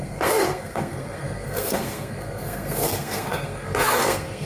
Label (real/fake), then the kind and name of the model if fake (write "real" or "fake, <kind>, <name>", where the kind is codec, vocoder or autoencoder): fake, codec, SNAC